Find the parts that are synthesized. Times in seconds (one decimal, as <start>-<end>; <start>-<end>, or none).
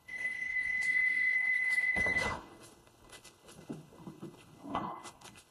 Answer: 0.0-5.5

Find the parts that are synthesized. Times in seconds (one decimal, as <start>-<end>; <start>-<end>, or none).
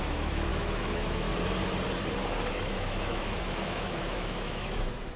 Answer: 0.0-1.3; 2.5-5.2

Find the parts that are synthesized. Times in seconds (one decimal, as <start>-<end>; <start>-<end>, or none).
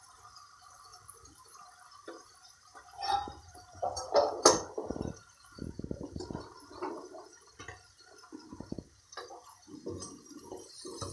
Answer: none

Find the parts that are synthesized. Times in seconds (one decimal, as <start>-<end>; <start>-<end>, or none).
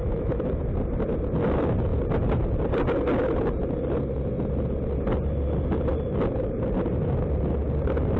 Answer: 0.0-0.6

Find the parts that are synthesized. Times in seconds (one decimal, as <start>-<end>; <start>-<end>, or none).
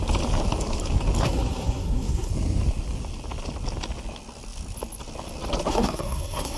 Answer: 1.2-2.3; 5.7-6.6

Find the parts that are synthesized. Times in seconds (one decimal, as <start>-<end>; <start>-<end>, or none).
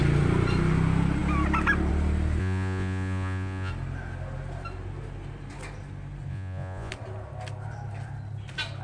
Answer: 2.4-3.7; 6.3-6.9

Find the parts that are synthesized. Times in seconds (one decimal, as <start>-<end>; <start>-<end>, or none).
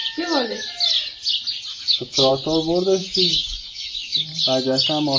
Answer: 1.7-2.3; 3.0-4.3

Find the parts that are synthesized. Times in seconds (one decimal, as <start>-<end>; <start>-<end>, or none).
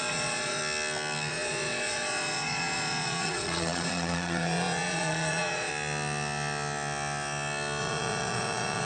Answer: 0.0-0.6; 1.3-5.7; 7.8-8.8